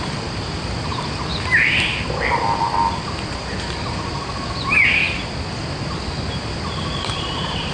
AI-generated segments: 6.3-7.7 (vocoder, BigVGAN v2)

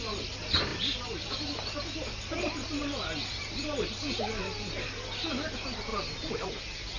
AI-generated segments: 0.7-1.3 (vocoder, BigVGAN v2); 5.9-6.6